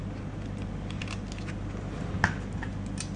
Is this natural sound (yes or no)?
yes